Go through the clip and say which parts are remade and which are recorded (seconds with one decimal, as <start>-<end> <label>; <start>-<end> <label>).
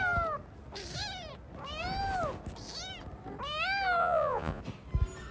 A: 0.0-4.0 recorded; 4.0-4.6 remade; 4.6-5.3 recorded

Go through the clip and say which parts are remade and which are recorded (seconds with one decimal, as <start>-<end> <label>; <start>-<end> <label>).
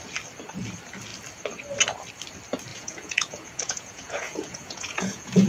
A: 0.0-2.7 recorded; 2.7-5.5 remade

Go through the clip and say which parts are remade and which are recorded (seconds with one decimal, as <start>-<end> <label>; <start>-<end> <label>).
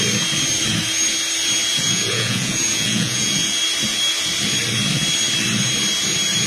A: 0.0-1.7 recorded; 1.7-3.6 remade; 3.6-6.5 recorded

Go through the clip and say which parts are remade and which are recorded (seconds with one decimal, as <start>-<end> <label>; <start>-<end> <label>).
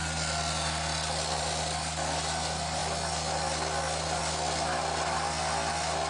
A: 0.0-6.1 recorded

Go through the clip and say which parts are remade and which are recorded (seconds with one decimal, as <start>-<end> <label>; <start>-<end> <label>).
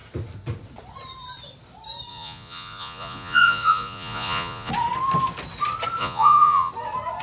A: 0.0-2.1 recorded; 2.1-4.7 remade; 4.7-6.0 recorded; 6.0-6.7 remade; 6.7-7.2 recorded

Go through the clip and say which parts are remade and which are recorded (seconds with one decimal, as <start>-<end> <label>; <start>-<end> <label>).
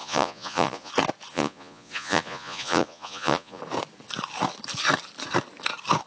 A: 0.0-0.9 remade; 0.9-1.3 recorded; 1.3-3.6 remade; 3.6-6.1 recorded